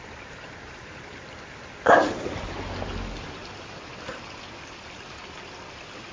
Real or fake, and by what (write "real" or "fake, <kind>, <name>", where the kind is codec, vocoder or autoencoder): real